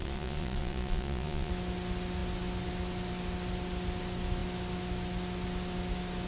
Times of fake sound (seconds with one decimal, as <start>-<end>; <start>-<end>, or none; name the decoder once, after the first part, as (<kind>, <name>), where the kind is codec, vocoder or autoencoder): 0.0-1.5 (vocoder, Vocos)